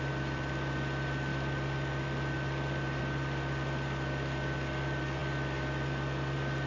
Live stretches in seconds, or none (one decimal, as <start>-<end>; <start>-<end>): 0.0-6.7